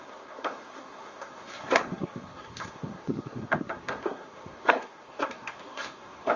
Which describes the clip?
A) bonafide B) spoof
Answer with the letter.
B